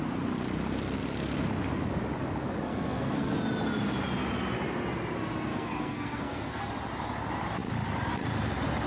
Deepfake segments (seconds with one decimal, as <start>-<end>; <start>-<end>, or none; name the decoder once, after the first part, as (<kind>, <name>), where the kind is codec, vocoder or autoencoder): 2.7-3.3 (codec, SNAC); 5.5-6.7